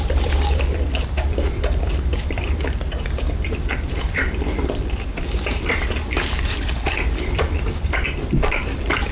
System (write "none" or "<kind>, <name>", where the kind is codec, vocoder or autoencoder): vocoder, BigVGAN v2